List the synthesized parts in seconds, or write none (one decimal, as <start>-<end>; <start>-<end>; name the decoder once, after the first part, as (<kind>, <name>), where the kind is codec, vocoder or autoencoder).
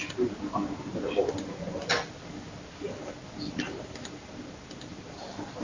none